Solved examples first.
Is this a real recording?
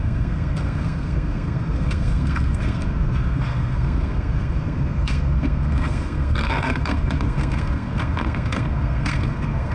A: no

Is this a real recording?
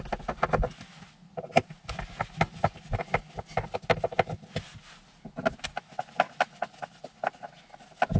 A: yes